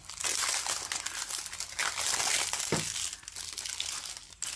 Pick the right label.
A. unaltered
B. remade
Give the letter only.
A